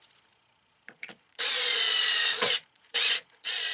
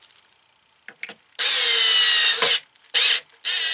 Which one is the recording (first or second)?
second